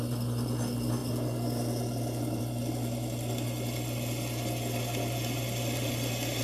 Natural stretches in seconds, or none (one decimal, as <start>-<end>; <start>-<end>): 0.0-6.4